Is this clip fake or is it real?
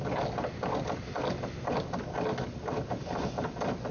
real